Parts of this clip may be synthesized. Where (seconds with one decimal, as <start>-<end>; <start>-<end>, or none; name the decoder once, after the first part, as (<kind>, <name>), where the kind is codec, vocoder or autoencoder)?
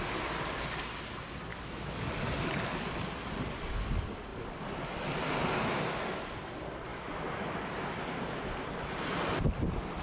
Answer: 1.5-2.1 (autoencoder, DAC-VAE); 6.9-7.4